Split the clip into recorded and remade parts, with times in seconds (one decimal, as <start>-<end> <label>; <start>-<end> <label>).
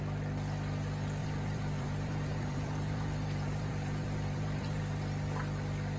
0.0-1.2 recorded; 1.2-4.8 remade; 4.8-6.0 recorded